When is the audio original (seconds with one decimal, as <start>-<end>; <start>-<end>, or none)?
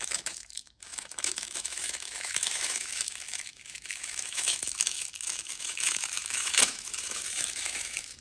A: none